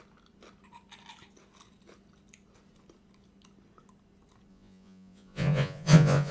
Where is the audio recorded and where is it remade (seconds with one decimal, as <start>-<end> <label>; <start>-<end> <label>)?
0.0-4.5 recorded; 4.5-6.3 remade